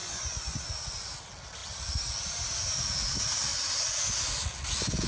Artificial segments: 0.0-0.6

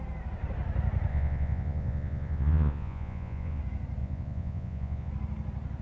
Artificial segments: 1.1-3.6; 4.0-5.1

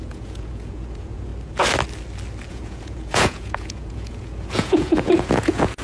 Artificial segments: 0.0-1.3; 2.5-5.8

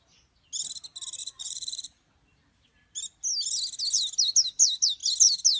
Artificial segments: 1.2-2.1

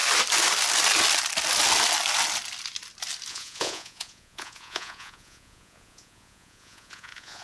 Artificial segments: 3.3-7.4

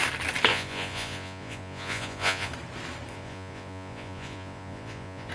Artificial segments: 0.5-2.5; 3.1-5.3

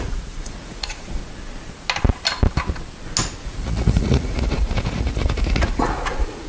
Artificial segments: 0.0-1.2; 3.4-6.5